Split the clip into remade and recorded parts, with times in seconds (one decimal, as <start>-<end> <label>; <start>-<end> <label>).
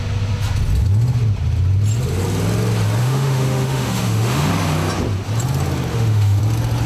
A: 0.0-3.0 recorded; 3.0-4.5 remade; 4.5-5.9 recorded; 5.9-6.4 remade; 6.4-6.9 recorded